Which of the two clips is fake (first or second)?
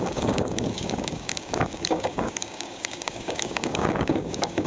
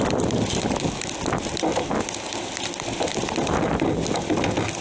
first